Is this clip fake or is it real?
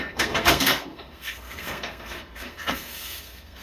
fake